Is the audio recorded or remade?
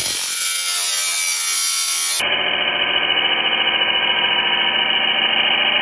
recorded